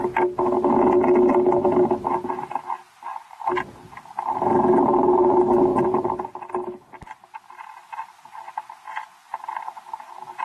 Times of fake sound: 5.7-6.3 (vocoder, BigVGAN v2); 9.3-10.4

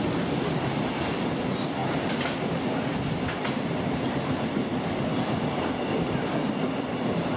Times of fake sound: none

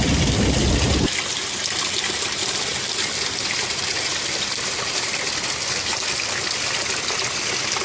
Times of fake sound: 2.7-5.7 (vocoder, BigVGAN v2)

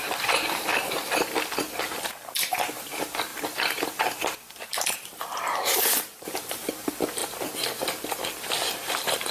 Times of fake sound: 0.0-0.7 (vocoder, BigVGAN v2); 1.8-3.3; 4.5-7.2; 8.4-9.3

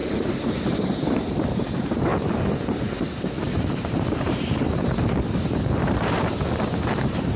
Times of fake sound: 0.0-2.1 (vocoder, BigVGAN v2); 3.4-7.4

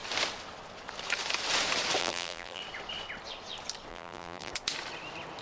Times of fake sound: 2.0-2.6 (vocoder, BigVGAN v2); 3.9-4.5